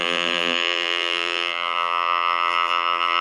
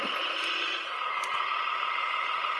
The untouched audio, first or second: second